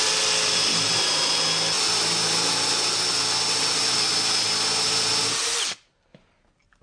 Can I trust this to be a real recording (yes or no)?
yes